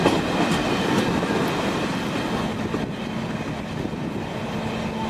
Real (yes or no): yes